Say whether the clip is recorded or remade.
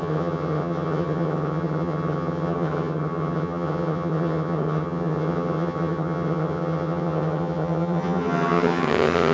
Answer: remade